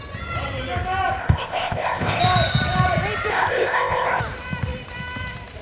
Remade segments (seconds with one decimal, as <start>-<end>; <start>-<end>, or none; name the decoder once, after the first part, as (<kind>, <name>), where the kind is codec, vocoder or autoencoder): 1.2-2.2 (codec, ZipCodec); 3.3-4.2